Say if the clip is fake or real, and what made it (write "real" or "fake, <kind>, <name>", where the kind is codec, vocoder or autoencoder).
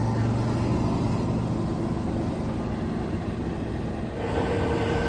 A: real